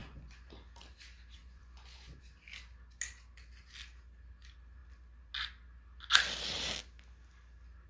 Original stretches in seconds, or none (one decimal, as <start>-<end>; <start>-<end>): 0.5-1.4; 2.2-7.9